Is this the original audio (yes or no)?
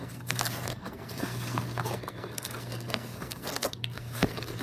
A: no